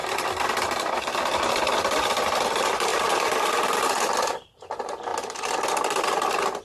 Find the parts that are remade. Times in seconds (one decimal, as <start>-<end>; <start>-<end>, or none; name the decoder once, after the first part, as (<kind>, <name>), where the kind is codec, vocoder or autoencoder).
0.0-1.4 (vocoder, BigVGAN v2); 2.9-4.6; 5.1-6.0